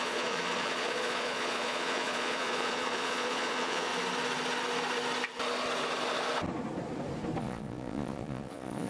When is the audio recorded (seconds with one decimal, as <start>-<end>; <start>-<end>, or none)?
3.9-7.4